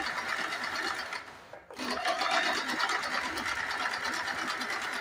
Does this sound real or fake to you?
real